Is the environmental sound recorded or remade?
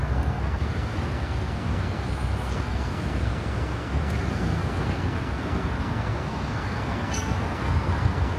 remade